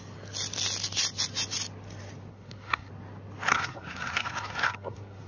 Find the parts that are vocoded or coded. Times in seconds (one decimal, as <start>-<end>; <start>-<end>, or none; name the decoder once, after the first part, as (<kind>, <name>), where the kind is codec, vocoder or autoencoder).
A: 2.3-2.9 (codec, SNAC); 3.5-5.3